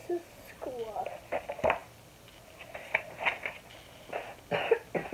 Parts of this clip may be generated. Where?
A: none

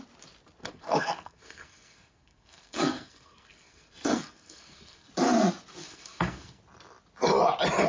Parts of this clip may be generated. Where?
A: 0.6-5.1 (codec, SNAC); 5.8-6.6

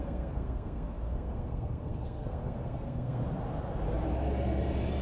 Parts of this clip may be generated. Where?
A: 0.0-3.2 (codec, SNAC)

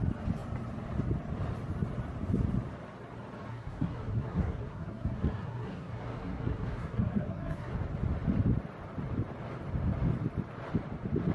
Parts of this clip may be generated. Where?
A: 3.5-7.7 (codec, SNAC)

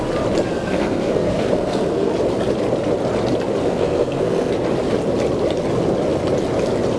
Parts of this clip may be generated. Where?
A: 0.5-2.1 (codec, SNAC); 3.6-4.5

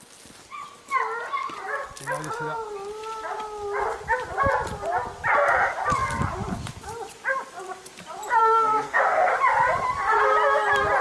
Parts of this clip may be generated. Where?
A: 8.4-9.3 (codec, SNAC)